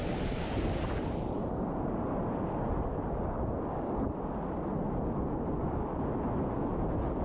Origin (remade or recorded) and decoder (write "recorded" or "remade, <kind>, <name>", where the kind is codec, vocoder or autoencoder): recorded